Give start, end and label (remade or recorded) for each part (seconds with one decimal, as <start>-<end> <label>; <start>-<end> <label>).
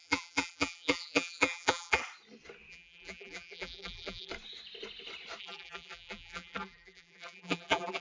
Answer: 0.0-2.0 remade; 2.0-2.7 recorded; 2.7-4.3 remade; 4.3-5.4 recorded; 5.4-8.0 remade